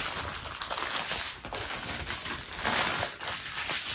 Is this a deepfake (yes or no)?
no